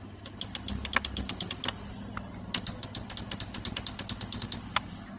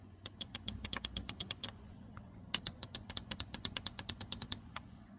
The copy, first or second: second